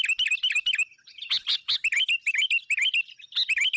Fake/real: real